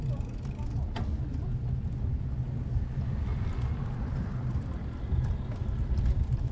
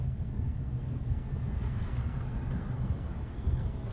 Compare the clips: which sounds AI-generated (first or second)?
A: second